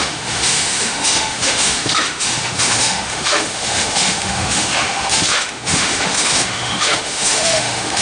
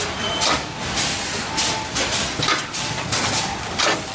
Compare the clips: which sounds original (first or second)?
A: second